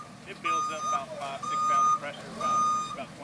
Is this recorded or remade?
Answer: recorded